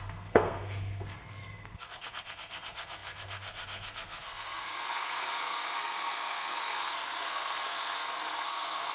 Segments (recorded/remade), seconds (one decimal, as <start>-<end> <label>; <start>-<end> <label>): 0.0-8.9 remade